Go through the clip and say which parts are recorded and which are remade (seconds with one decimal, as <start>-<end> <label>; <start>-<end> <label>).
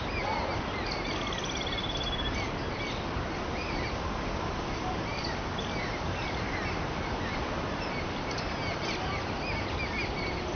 0.0-10.6 recorded